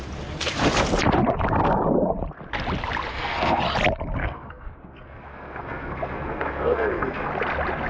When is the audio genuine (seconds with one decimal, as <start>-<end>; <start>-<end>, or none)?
0.0-3.1; 3.6-4.2; 7.3-7.9